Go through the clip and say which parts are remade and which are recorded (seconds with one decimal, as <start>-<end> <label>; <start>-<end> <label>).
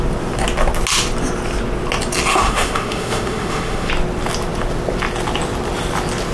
0.0-2.3 recorded; 2.3-3.9 remade; 3.9-6.3 recorded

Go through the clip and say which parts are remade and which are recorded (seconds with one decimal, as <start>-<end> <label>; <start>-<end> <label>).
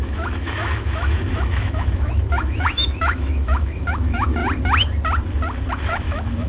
0.0-4.4 remade; 4.4-5.7 recorded; 5.7-6.5 remade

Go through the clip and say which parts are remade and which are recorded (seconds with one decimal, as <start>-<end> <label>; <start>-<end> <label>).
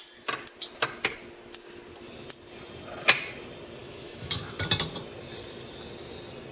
0.0-3.8 recorded; 3.8-4.4 remade; 4.4-6.5 recorded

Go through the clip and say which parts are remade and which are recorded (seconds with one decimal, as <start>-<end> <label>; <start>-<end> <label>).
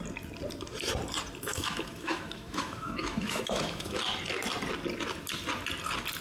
0.0-1.5 recorded; 1.5-4.0 remade; 4.0-6.2 recorded